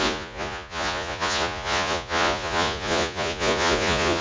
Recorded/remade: remade